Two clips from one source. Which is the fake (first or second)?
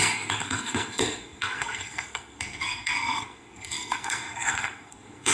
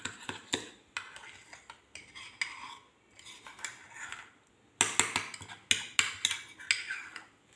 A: first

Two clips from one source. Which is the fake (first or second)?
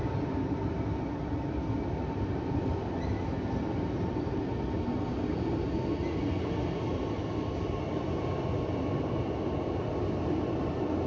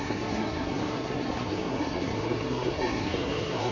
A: second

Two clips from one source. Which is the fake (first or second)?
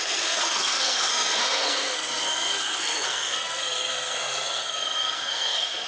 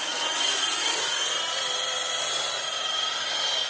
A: first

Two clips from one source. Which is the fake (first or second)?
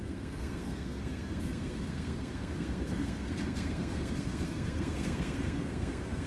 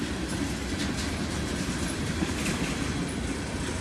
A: first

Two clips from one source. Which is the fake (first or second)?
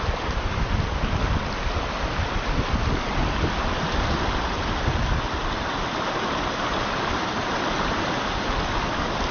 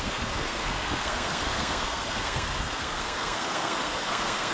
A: second